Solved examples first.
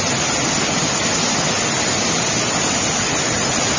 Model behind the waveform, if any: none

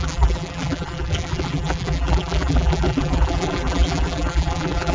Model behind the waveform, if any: vocoder, BigVGAN v2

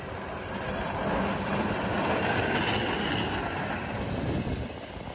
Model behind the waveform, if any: none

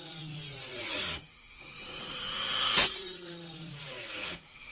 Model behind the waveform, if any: vocoder, Vocos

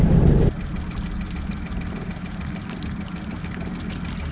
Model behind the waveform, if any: none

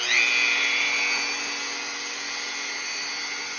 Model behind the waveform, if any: none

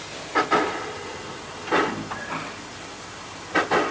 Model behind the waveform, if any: none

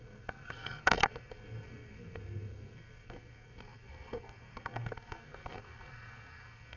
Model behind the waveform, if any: codec, SNAC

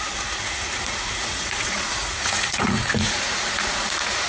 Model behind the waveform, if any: vocoder, Vocos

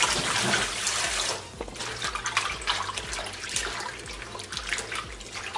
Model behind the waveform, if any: none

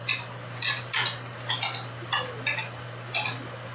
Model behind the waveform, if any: none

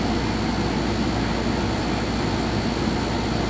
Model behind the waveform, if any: none